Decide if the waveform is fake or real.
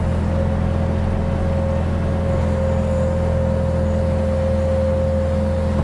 real